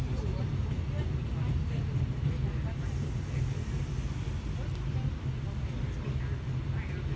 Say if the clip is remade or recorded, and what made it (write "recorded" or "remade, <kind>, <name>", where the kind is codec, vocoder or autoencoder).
recorded